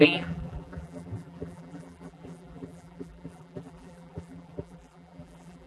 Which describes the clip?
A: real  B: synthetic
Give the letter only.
B